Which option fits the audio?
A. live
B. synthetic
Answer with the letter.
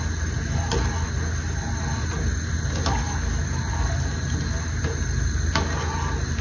A